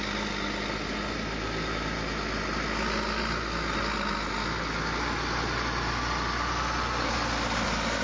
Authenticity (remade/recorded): recorded